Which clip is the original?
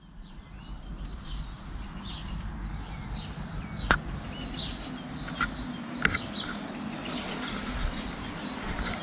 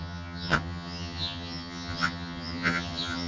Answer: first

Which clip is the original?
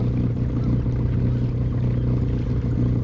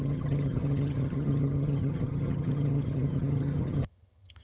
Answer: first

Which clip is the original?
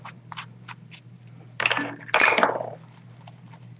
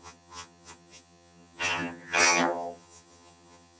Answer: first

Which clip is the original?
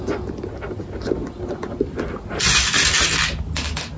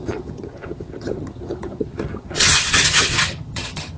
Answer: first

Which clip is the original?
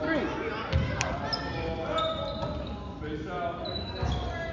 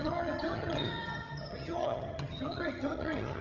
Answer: first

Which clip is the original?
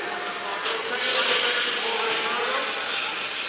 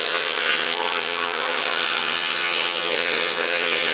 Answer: first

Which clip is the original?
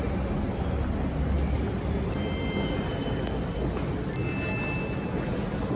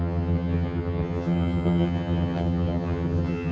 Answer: first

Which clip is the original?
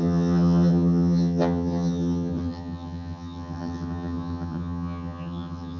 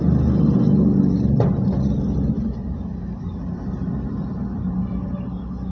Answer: second